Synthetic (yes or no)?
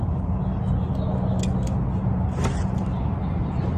no